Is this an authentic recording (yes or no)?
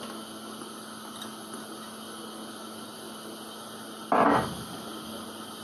yes